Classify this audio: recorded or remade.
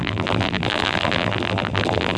remade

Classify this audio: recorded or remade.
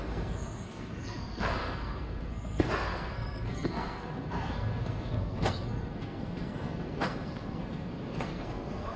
remade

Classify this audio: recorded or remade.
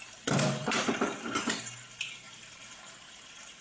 remade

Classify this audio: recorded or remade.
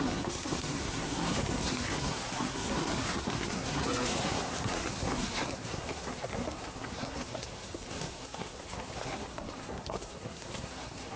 remade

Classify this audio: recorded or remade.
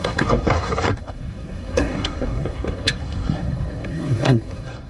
remade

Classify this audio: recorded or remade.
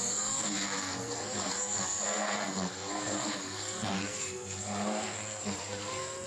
remade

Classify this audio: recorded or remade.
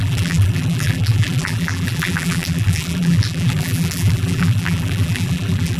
remade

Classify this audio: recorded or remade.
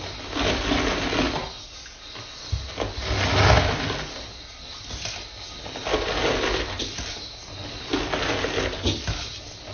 recorded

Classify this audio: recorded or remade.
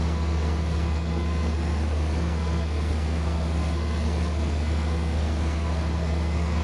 remade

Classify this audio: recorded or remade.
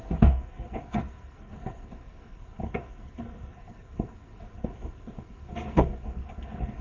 remade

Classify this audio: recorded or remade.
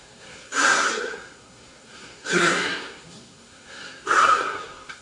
remade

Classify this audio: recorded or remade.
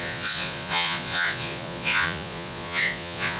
remade